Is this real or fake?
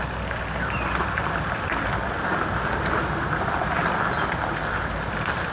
fake